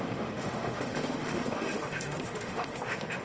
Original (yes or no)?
no